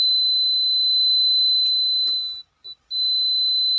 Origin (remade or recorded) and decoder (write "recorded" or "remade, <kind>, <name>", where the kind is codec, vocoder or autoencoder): recorded